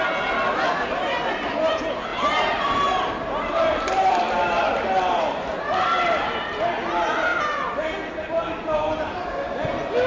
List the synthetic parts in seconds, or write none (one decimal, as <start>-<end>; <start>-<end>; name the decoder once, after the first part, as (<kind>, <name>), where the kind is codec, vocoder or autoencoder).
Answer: 2.1-5.2 (vocoder, BigVGAN v2); 7.3-9.1